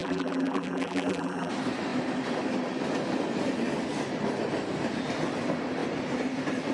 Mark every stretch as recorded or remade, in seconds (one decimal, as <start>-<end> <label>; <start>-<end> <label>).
0.0-1.5 remade; 1.5-6.7 recorded